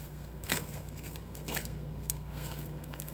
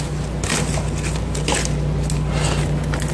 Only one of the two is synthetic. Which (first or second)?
first